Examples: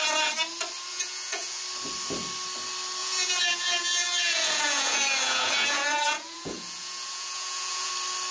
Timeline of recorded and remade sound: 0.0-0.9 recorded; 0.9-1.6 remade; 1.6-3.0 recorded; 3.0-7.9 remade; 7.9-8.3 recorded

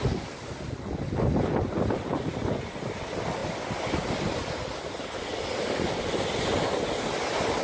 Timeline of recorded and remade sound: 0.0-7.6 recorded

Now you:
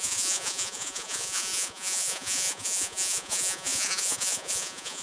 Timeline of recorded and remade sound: 0.0-5.0 remade